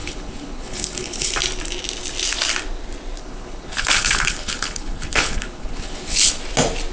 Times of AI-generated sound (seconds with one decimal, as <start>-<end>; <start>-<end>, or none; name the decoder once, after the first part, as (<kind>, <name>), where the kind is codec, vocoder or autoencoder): 0.0-1.3 (codec, HILCodec); 3.2-6.4